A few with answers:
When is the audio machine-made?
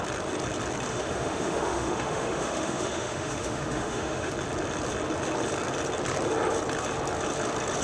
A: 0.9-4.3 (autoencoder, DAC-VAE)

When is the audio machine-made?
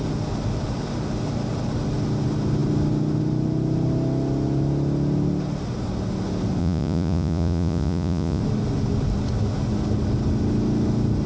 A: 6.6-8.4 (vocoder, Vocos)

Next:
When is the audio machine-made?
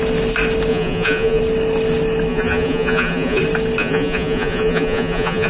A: 0.7-1.4 (vocoder, Vocos); 2.3-3.4; 3.8-5.5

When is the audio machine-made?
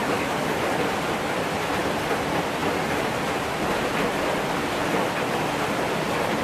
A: 0.0-0.7 (codec, DAC)